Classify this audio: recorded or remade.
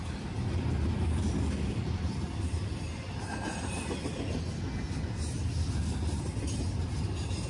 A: recorded